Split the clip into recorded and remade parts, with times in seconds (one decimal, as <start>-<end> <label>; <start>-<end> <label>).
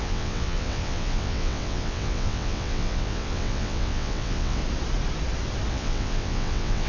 0.0-4.6 remade; 4.6-5.7 recorded; 5.7-6.9 remade